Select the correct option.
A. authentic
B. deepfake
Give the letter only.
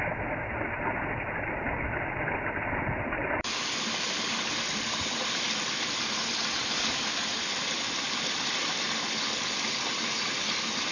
A